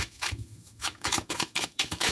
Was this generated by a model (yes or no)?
yes